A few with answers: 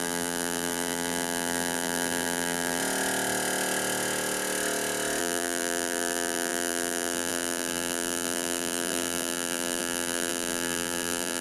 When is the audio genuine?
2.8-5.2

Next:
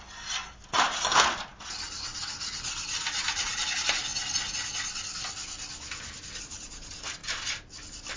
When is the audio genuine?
1.5-2.6; 4.1-5.0; 7.2-8.2

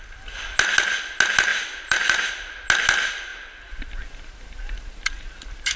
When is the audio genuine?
0.0-1.5; 2.3-5.8

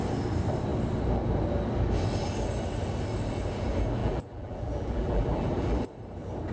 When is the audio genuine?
0.0-4.0; 5.8-6.5